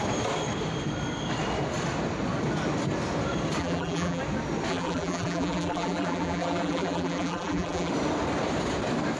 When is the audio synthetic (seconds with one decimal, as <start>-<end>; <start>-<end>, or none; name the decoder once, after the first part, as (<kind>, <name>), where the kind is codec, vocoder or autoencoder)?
3.6-4.2 (vocoder, BigVGAN v2); 4.7-7.9